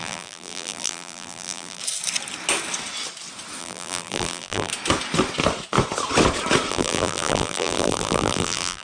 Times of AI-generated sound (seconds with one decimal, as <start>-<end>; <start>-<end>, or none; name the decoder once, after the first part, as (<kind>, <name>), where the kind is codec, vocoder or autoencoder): 0.0-1.8 (vocoder, BigVGAN v2); 3.6-4.7; 6.7-8.8